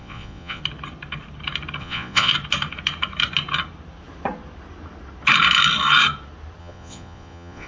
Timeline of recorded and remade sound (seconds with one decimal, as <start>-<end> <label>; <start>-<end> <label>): 0.0-0.6 remade; 0.6-1.8 recorded; 1.8-2.3 remade; 2.3-6.6 recorded; 6.6-7.7 remade